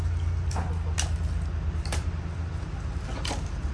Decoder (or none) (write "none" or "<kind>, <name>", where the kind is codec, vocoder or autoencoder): none